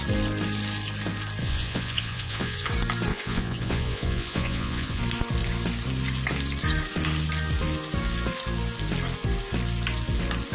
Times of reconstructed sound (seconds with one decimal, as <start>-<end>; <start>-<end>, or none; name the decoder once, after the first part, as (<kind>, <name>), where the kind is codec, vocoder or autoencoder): 1.4-2.7 (vocoder, Vocos); 3.1-5.0